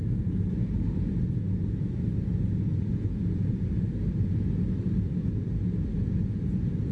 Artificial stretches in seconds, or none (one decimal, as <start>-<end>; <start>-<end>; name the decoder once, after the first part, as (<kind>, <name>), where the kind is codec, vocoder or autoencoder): none